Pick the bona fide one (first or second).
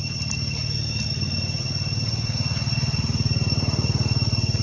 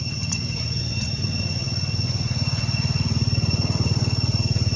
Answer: first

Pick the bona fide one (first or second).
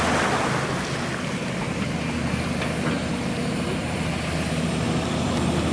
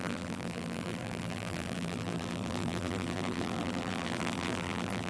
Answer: first